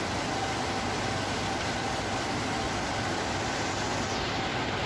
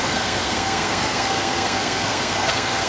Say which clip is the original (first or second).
first